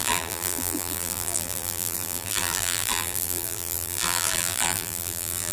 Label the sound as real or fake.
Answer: fake